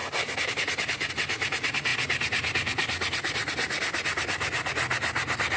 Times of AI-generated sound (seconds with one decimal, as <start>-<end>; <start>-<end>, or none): none